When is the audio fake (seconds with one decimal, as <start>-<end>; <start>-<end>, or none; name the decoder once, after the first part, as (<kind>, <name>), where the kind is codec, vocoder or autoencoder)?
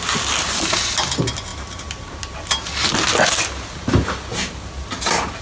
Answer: none